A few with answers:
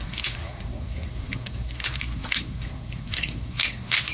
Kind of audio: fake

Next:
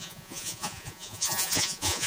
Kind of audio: fake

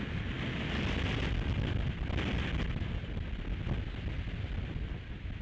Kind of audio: real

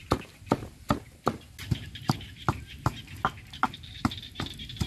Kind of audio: real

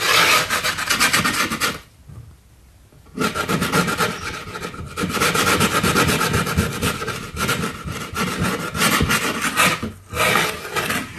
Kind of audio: real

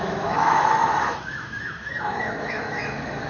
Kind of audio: fake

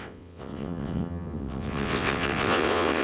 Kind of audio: fake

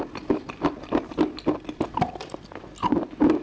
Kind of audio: real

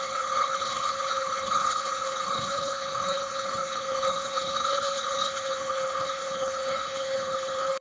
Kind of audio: fake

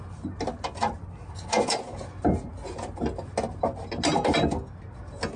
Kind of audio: real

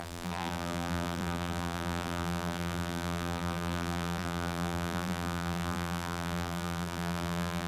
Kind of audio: fake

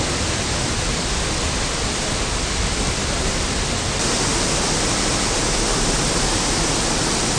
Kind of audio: real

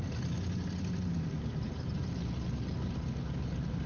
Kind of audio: real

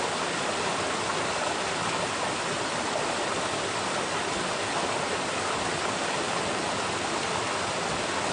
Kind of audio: real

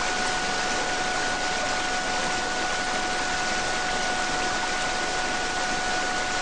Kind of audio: real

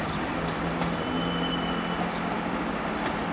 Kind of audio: real